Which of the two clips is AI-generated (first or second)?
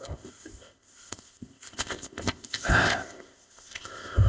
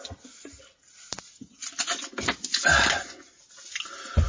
first